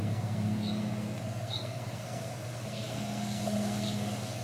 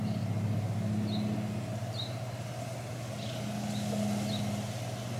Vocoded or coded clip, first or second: first